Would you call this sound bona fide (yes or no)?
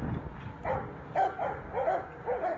yes